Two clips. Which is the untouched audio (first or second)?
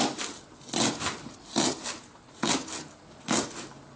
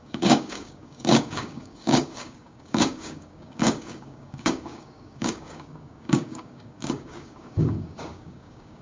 first